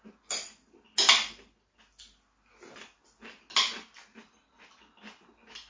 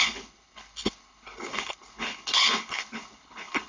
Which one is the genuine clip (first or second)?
first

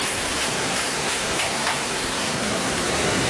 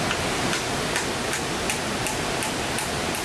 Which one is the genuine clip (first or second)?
second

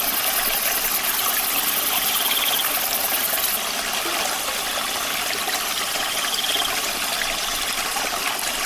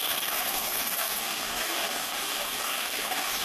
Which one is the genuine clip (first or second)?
first